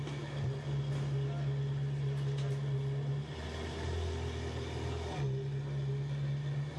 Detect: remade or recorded recorded